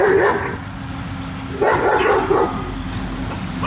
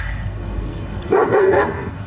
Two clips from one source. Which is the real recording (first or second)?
first